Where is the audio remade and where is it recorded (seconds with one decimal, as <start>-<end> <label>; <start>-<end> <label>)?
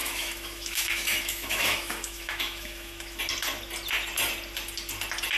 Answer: 0.0-3.2 remade; 3.2-5.4 recorded